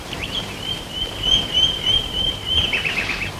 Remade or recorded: remade